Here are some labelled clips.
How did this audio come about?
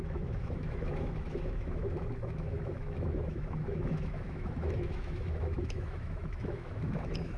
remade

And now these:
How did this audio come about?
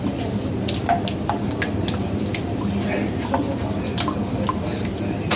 recorded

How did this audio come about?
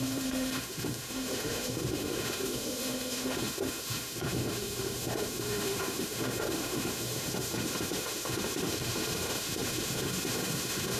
remade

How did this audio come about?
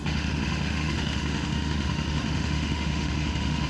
remade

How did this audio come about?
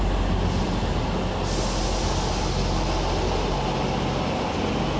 recorded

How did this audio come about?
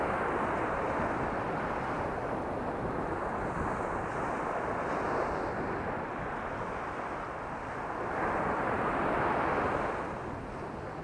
recorded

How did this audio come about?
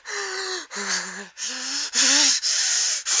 recorded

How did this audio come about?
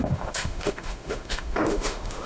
remade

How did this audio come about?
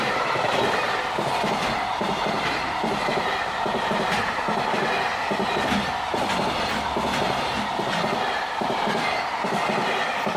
recorded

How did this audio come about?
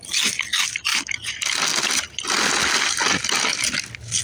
recorded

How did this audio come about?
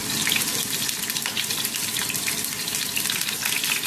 recorded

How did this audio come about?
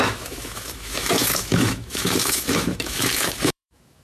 remade